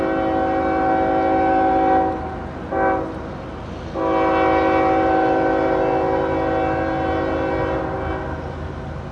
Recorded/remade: recorded